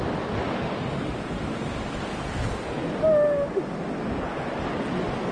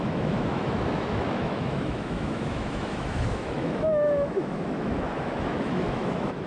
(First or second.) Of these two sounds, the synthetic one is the second